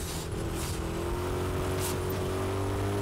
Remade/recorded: recorded